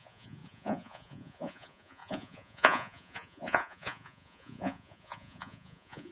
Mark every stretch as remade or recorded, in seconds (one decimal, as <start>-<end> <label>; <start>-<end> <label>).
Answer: 0.0-6.1 remade